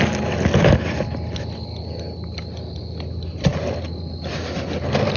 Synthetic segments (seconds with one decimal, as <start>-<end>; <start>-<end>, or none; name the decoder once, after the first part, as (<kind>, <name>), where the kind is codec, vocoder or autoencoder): none